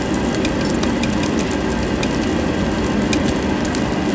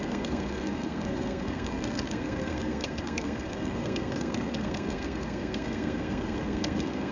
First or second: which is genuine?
first